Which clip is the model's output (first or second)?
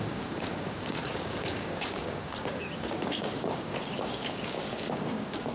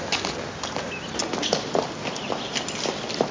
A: first